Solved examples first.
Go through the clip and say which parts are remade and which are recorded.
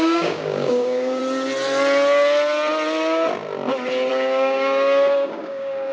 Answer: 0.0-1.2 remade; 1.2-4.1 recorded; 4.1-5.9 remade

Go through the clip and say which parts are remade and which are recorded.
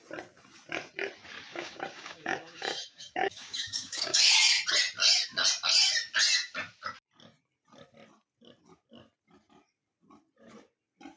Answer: 0.0-1.5 recorded; 1.5-4.3 remade; 4.3-11.2 recorded